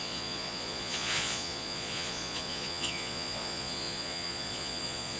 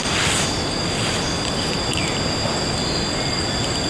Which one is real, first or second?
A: second